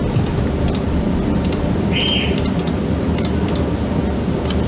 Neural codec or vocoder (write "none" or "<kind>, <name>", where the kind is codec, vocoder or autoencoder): none